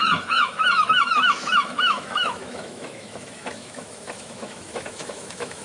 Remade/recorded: remade